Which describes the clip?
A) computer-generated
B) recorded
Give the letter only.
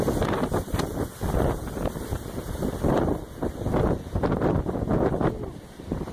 A